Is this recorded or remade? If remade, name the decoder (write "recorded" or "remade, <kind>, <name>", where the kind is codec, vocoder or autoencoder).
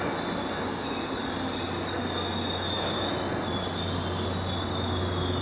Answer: recorded